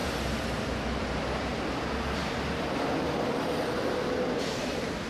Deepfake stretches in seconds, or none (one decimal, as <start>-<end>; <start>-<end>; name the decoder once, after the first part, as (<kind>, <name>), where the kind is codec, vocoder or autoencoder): 2.2-5.1 (vocoder, BigVGAN v2)